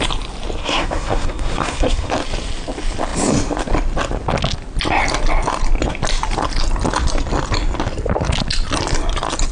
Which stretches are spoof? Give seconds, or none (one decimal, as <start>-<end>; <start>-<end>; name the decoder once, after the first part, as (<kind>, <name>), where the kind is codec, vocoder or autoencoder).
0.6-2.1 (codec, SNAC)